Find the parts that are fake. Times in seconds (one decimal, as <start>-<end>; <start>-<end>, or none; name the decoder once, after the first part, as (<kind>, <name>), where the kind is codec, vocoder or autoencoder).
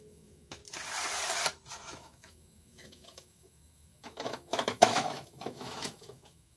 0.0-0.6 (autoencoder, DAC-VAE); 1.9-6.6